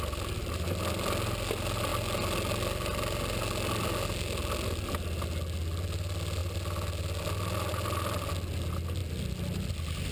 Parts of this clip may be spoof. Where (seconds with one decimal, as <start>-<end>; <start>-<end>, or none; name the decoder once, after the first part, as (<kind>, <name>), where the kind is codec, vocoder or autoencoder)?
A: none